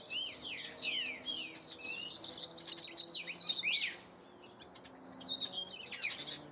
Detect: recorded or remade recorded